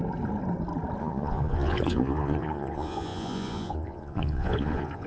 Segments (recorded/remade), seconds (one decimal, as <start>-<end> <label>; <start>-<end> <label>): 0.0-1.0 recorded; 1.0-5.1 remade